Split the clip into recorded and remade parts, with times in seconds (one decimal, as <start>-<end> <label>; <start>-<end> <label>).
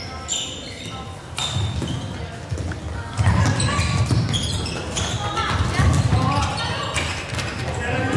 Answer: 0.0-2.9 recorded; 2.9-3.4 remade; 3.4-8.2 recorded